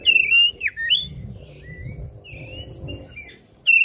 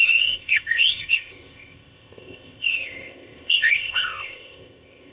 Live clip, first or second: first